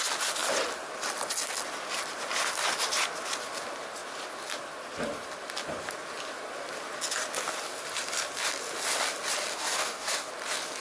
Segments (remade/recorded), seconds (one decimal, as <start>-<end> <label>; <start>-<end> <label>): 0.0-9.5 recorded; 9.5-10.3 remade; 10.3-10.8 recorded